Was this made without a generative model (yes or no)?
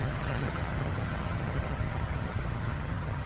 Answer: no